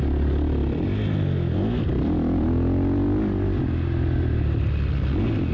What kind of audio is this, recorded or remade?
recorded